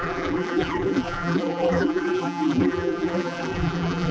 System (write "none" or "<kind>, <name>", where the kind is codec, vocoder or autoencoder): vocoder, BigVGAN v2